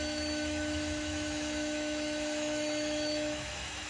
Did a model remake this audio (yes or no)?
yes